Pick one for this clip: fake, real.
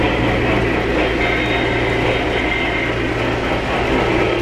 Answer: real